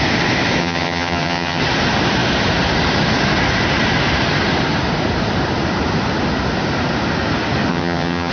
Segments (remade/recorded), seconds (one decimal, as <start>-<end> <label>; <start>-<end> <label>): 0.0-0.6 recorded; 0.6-1.6 remade; 1.6-7.7 recorded; 7.7-8.3 remade